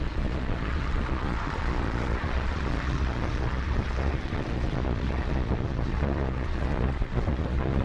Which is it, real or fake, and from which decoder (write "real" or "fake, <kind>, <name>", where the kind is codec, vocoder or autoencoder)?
fake, vocoder, Vocos